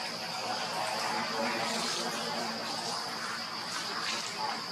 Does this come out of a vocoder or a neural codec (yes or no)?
no